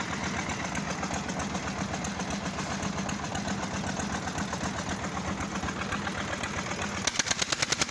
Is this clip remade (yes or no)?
no